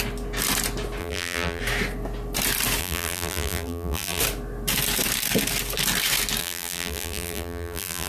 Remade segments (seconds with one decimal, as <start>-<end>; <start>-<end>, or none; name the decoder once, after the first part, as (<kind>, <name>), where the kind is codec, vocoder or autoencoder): 1.0-1.6 (vocoder, BigVGAN v2); 2.8-4.2; 6.4-8.1